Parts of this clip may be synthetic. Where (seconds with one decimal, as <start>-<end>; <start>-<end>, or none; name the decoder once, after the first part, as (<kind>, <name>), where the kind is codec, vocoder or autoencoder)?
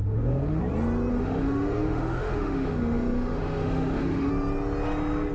0.0-0.6 (autoencoder, DAC-VAE); 1.1-4.3